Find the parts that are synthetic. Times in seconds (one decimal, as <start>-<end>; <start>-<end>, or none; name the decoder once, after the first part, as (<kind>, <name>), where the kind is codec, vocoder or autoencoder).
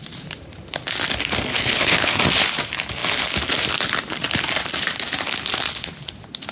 1.5-2.2 (codec, HILCodec)